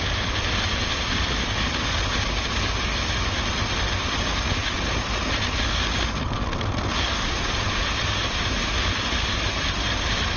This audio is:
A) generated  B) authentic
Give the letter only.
B